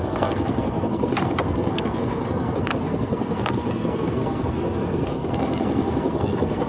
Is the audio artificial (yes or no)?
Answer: yes